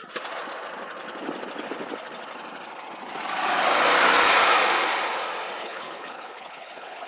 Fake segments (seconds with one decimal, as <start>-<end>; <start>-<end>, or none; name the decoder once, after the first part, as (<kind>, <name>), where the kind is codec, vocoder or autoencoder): 5.6-7.1 (codec, HILCodec)